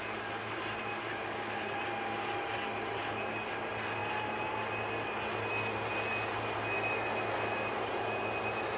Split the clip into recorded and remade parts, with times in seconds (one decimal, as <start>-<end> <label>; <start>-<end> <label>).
0.0-8.8 recorded

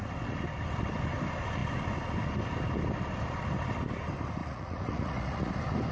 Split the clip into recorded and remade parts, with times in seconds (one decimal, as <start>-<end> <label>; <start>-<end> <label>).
0.0-4.4 recorded; 4.4-5.5 remade; 5.5-5.9 recorded

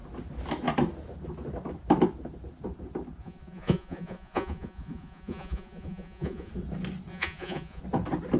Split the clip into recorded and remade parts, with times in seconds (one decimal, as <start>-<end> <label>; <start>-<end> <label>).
0.0-3.2 recorded; 3.2-6.5 remade; 6.5-7.1 recorded; 7.1-7.8 remade; 7.8-8.4 recorded

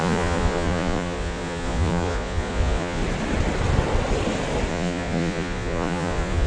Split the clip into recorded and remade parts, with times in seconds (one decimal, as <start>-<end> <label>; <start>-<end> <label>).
0.0-3.0 remade; 3.0-4.7 recorded; 4.7-6.5 remade

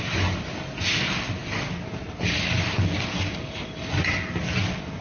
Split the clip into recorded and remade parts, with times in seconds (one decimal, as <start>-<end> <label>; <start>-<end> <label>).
0.0-5.0 recorded